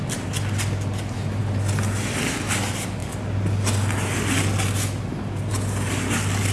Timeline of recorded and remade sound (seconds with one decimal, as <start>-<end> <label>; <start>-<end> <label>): 0.0-6.5 recorded